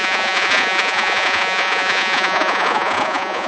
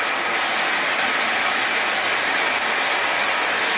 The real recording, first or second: second